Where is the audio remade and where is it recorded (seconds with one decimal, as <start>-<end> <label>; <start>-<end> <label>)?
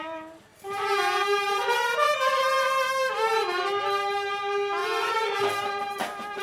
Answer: 0.0-0.5 recorded; 0.5-3.6 remade; 3.6-4.8 recorded; 4.8-6.4 remade